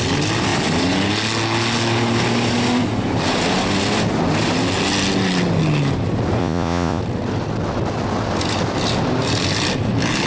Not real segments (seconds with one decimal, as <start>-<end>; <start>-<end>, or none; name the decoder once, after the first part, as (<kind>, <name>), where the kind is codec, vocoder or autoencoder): 6.4-7.0 (vocoder, Vocos)